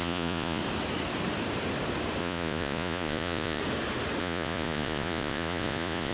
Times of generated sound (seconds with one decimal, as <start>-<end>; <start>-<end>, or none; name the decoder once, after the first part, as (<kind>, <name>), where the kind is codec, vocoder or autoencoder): 0.0-0.6 (vocoder, Vocos); 2.2-3.6; 4.2-6.1